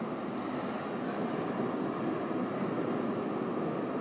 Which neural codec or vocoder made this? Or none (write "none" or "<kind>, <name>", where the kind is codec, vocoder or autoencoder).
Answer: none